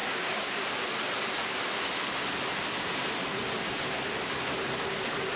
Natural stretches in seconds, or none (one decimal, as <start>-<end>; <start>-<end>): 0.6-5.4